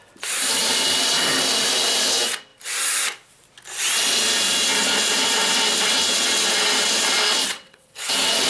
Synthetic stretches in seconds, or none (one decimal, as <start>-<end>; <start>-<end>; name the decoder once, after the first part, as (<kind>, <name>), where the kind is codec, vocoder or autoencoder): 7.4-8.1 (vocoder, WaveNeXt)